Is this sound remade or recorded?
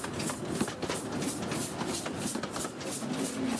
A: recorded